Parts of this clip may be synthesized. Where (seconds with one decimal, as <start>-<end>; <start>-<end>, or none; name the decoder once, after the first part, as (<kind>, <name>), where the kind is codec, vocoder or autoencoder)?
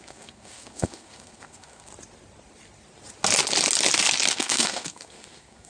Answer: 0.0-1.9 (codec, SNAC); 4.3-5.7